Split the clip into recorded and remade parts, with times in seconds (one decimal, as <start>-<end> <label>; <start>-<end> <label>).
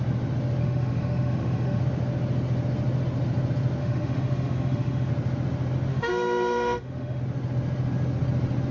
0.0-0.6 recorded; 0.6-1.8 remade; 1.8-3.8 recorded; 3.8-5.1 remade; 5.1-5.9 recorded; 5.9-7.2 remade; 7.2-8.7 recorded